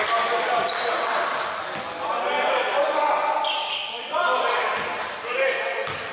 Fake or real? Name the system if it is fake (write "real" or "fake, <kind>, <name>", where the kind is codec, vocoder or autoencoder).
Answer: real